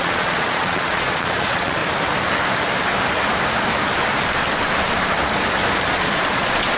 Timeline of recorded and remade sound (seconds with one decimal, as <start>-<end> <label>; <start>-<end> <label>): 0.0-1.8 remade; 1.8-5.9 recorded; 5.9-6.8 remade